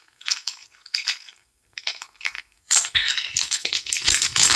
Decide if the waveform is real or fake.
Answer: fake